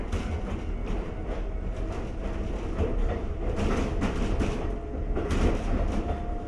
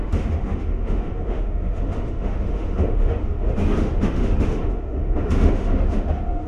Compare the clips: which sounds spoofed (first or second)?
second